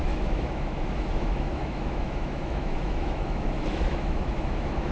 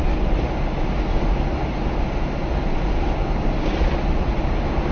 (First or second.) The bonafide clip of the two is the second